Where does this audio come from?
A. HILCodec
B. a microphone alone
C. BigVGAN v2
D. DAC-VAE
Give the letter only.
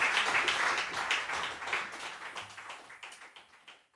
B